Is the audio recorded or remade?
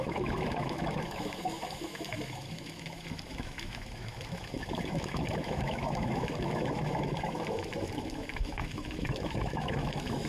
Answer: remade